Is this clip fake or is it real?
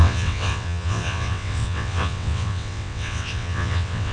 fake